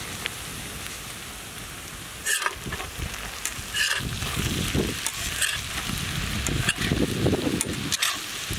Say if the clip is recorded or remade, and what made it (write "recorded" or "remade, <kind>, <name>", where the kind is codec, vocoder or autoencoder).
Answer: recorded